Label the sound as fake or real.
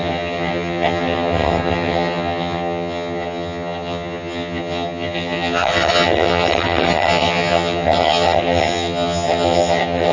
fake